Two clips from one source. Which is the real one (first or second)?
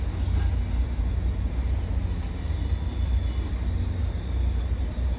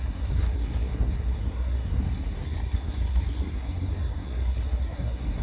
first